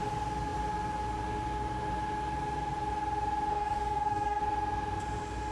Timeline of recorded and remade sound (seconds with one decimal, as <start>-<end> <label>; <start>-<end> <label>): 0.0-3.5 recorded; 3.5-4.4 remade; 4.4-5.5 recorded